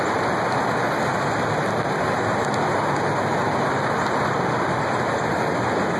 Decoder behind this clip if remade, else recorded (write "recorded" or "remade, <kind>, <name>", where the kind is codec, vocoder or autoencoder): recorded